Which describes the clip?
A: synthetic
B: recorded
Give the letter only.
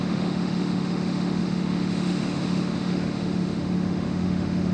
A